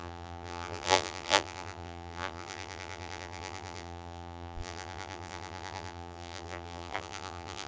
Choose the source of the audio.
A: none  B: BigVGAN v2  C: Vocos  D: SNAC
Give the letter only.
B